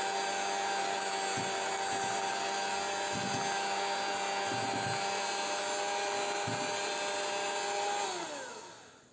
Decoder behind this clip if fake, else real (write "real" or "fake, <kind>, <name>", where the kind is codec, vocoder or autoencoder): real